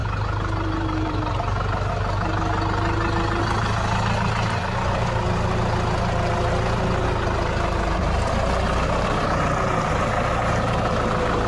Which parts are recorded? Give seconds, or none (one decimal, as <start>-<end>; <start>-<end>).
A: 1.9-11.5